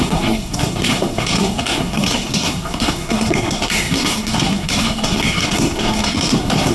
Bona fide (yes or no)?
no